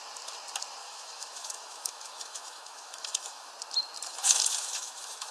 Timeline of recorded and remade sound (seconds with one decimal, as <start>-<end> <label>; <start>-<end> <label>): 0.0-0.8 recorded; 0.8-3.5 remade; 3.5-4.1 recorded; 4.1-5.3 remade